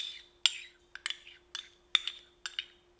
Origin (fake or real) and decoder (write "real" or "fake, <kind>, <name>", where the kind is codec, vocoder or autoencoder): real